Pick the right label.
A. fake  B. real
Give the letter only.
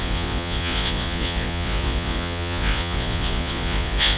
A